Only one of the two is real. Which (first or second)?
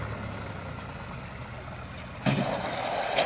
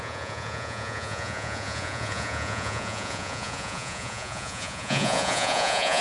first